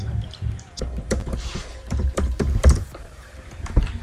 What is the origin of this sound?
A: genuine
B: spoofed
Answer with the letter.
B